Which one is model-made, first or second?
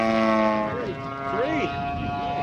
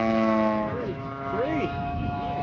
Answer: second